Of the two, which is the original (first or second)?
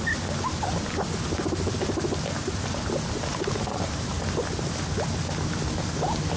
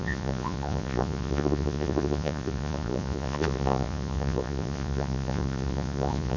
first